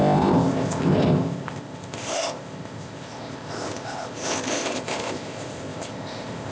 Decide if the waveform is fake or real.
fake